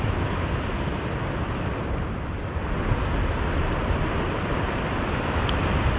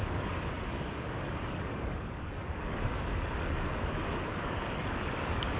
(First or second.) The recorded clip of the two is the first